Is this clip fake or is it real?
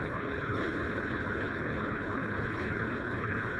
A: fake